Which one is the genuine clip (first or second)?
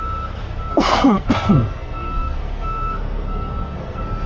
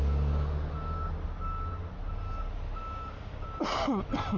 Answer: second